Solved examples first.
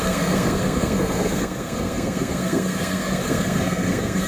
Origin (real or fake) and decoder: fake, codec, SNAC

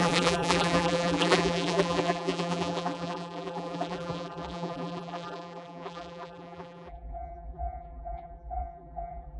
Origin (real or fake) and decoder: fake, vocoder, BigVGAN v2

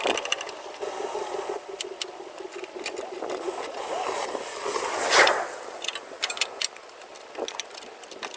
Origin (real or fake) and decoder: real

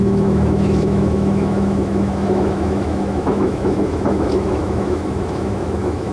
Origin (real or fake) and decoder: fake, autoencoder, DAC-VAE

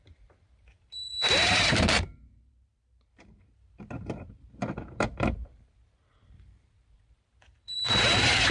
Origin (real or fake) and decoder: fake, vocoder, BigVGAN v2